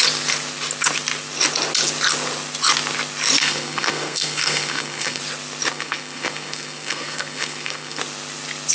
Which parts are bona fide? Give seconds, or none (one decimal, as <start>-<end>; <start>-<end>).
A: 0.0-3.4; 5.2-5.7; 8.0-8.7